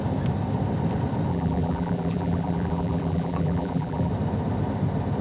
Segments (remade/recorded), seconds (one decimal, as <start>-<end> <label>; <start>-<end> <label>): 0.0-1.3 recorded; 1.3-4.1 remade; 4.1-5.2 recorded